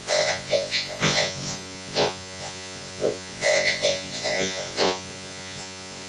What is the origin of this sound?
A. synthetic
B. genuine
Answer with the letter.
A